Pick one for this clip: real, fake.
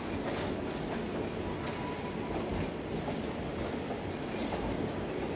real